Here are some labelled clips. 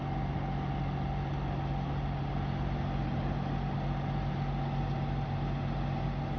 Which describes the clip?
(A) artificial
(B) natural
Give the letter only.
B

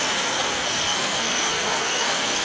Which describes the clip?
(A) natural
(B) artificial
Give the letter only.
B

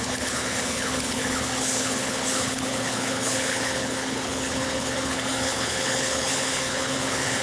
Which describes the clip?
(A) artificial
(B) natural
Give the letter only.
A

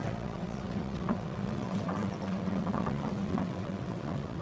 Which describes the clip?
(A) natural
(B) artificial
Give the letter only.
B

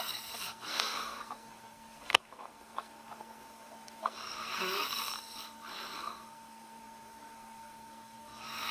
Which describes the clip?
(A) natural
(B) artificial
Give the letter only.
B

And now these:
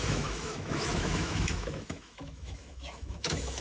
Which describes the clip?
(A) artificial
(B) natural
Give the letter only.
A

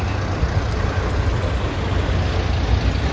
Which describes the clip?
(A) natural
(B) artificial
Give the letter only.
A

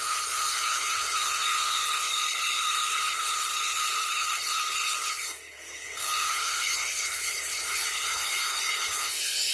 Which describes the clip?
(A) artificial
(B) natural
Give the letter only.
A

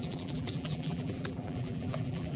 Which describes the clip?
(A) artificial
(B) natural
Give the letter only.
A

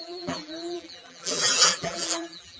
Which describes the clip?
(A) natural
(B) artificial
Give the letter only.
B